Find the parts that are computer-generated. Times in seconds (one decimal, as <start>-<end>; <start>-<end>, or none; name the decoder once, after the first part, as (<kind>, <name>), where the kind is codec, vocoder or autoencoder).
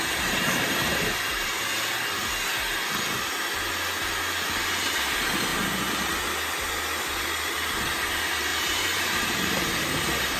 0.0-1.7 (vocoder, BigVGAN v2); 4.9-5.5; 8.1-10.4